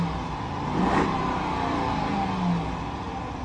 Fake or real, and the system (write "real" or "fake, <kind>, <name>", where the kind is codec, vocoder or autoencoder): real